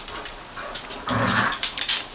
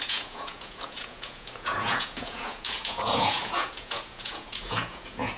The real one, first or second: first